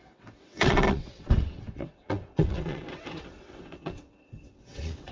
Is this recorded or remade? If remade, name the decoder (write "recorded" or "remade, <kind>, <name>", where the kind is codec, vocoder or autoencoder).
remade, vocoder, WaveNeXt